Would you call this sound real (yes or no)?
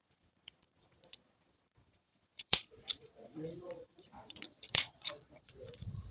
no